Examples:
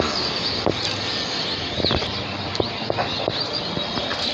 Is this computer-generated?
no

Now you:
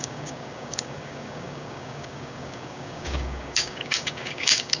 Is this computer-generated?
yes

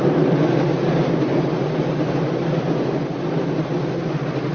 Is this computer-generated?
no